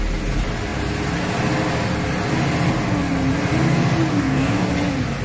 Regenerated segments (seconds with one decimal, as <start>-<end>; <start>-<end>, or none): 4.1-4.7